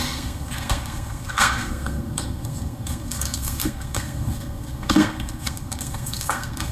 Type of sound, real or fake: fake